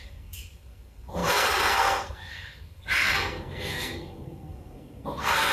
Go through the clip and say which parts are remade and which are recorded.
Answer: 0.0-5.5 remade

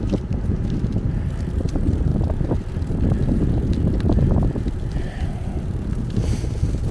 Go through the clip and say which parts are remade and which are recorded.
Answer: 0.0-6.9 recorded

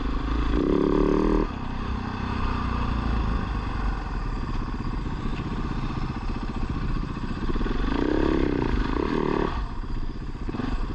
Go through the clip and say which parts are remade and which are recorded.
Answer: 0.0-10.9 recorded

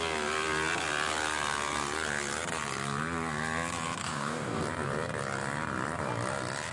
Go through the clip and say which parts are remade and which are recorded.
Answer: 0.0-4.0 recorded; 4.0-4.6 remade; 4.6-6.7 recorded